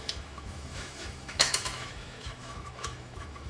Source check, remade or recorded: remade